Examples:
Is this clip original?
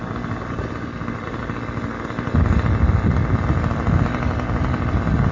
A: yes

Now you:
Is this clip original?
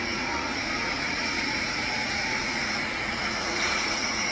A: no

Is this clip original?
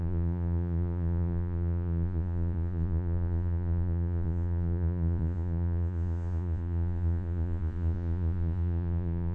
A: no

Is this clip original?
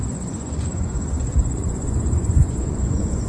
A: no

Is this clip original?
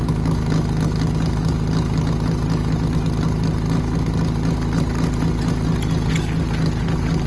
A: yes